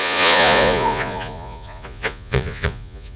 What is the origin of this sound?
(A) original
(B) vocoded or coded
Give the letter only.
B